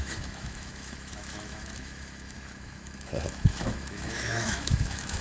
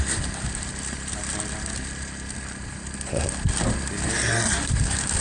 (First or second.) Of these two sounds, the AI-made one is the first